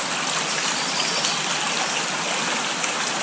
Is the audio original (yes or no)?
yes